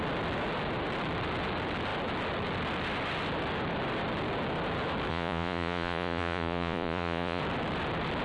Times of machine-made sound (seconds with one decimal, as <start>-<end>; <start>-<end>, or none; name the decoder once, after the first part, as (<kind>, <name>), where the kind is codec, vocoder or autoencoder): 5.1-7.4 (vocoder, Vocos)